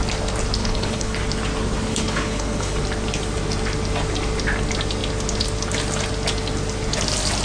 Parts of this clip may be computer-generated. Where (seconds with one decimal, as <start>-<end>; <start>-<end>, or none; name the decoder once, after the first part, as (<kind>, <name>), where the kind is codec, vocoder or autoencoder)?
0.6-1.2 (codec, HILCodec); 1.9-2.8